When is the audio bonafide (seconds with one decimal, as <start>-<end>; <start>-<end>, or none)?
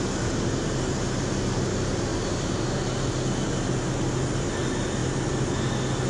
0.0-6.1